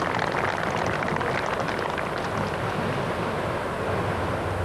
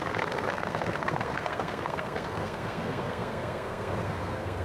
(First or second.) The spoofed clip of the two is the second